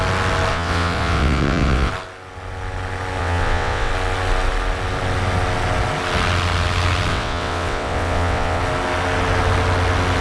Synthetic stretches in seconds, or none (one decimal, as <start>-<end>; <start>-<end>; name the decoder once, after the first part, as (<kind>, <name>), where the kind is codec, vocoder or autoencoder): 0.5-1.9 (vocoder, WaveNeXt); 3.2-3.9; 7.1-8.6